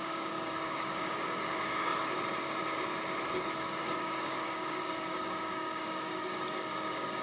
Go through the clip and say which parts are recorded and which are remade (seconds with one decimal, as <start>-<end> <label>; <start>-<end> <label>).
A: 0.0-1.9 remade; 1.9-3.6 recorded; 3.6-7.2 remade